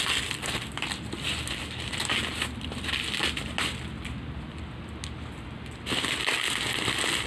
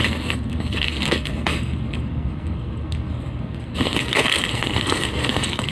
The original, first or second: first